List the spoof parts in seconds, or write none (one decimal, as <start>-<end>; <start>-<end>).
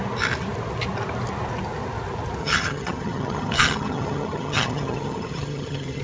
2.4-6.0